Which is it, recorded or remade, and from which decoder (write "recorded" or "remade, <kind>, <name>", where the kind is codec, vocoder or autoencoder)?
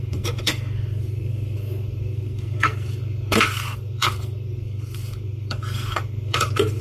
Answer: remade, codec, SNAC